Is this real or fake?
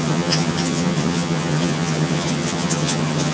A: fake